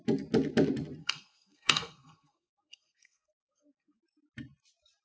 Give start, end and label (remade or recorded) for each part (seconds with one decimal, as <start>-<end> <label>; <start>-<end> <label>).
0.0-1.0 recorded; 1.0-4.0 remade; 4.0-5.0 recorded

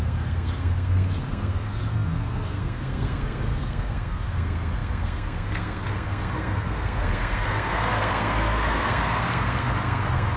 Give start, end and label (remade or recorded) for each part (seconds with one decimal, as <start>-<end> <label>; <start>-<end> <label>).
0.0-10.4 remade